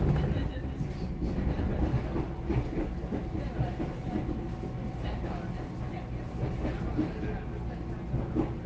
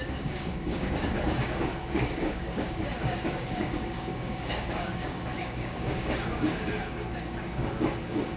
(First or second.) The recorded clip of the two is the first